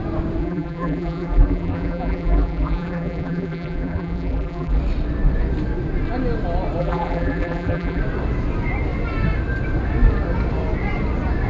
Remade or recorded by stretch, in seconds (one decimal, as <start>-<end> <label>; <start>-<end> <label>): 0.0-0.4 recorded; 0.4-4.8 remade; 4.8-6.8 recorded; 6.8-8.0 remade; 8.0-11.5 recorded